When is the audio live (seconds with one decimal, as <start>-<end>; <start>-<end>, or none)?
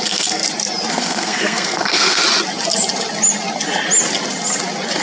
0.4-0.9; 2.2-5.0